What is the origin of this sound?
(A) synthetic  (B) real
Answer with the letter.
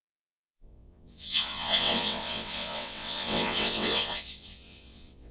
A